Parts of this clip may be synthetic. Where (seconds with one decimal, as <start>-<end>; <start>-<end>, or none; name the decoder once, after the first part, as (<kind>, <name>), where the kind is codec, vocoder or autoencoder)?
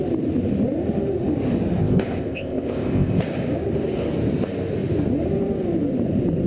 1.8-3.2 (codec, ZipCodec)